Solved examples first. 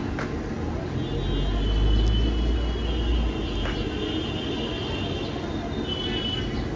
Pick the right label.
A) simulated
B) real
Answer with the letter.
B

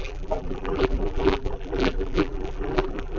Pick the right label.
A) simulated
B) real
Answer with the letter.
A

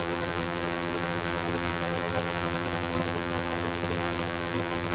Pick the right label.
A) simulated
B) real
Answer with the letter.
A